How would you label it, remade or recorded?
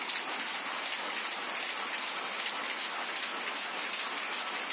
recorded